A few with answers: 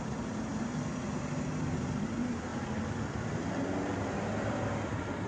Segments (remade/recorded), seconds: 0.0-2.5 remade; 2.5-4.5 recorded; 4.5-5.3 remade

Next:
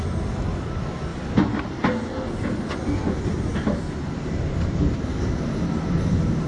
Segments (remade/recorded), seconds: 0.0-1.1 recorded; 1.1-1.6 remade; 1.6-6.5 recorded